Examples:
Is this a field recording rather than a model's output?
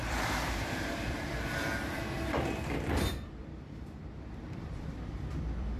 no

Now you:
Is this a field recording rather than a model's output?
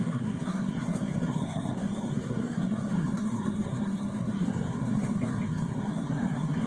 no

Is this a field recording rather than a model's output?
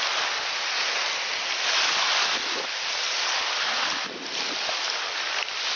yes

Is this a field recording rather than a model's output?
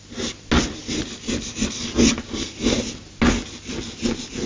yes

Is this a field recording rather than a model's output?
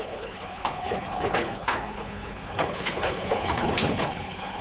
no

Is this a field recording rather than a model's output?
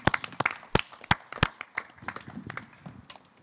yes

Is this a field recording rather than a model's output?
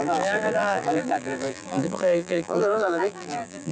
no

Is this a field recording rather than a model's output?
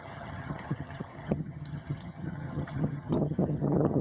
no